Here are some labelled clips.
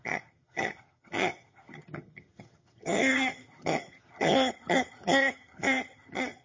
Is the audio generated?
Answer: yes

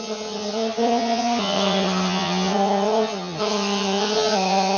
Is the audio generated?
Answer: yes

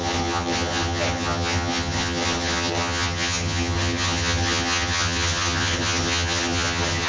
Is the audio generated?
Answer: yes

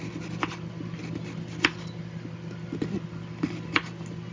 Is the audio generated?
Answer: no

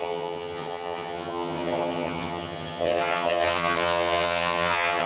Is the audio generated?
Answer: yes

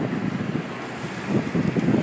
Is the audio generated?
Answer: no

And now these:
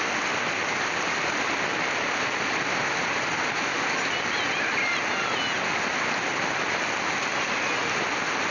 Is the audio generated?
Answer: no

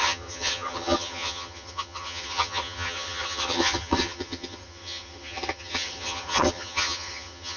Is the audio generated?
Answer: yes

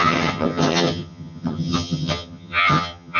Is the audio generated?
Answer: yes